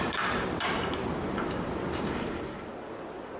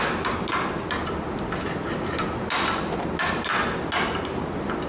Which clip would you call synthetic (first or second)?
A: first